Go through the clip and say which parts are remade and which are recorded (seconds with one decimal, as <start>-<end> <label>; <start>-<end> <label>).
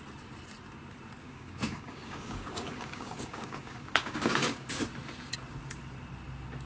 0.0-1.2 recorded; 1.2-4.8 remade; 4.8-6.7 recorded